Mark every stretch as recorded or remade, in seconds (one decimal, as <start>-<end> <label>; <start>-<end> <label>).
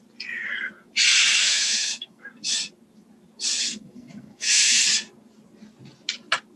0.0-1.4 recorded; 1.4-2.2 remade; 2.2-3.6 recorded; 3.6-4.8 remade; 4.8-6.6 recorded